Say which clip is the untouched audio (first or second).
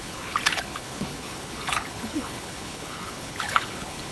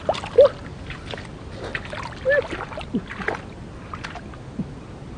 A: second